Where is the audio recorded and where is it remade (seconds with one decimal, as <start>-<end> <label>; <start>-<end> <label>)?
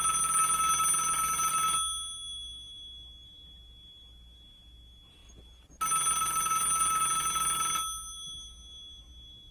0.0-9.5 recorded